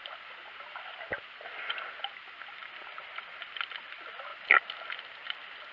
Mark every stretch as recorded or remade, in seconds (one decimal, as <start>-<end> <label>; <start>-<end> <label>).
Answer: 0.0-5.7 recorded